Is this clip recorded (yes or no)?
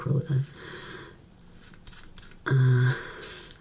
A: yes